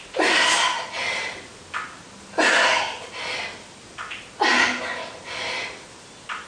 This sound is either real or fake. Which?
real